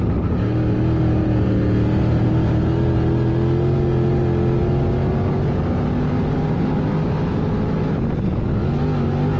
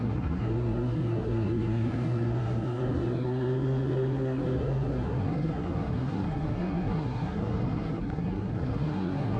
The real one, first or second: first